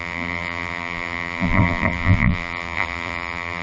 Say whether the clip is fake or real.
fake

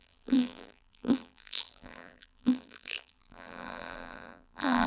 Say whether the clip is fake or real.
fake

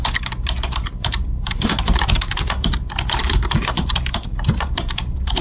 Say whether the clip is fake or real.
fake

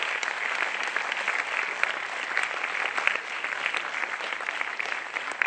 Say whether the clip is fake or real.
real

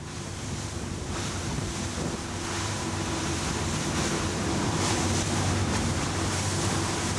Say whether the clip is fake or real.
fake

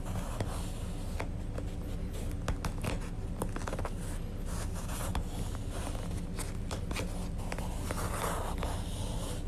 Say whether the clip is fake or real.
real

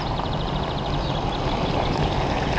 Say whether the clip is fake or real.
fake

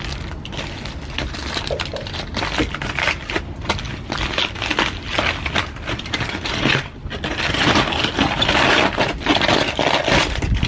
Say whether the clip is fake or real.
real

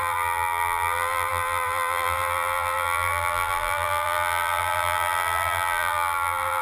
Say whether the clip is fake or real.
fake